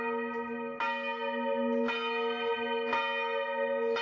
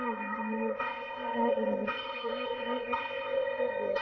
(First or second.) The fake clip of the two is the second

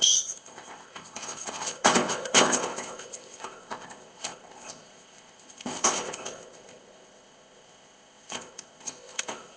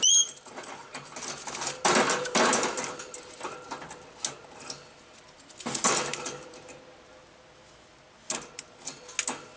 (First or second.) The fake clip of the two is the first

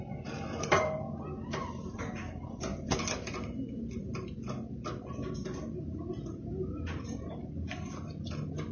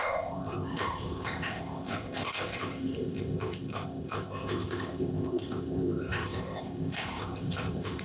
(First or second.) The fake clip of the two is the second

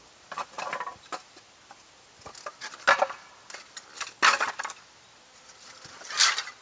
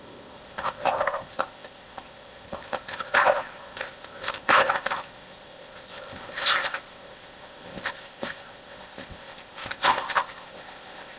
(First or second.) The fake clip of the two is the second